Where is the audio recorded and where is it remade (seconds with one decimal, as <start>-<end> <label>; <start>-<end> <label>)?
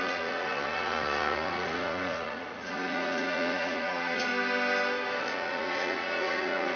0.0-4.3 remade; 4.3-5.2 recorded; 5.2-6.8 remade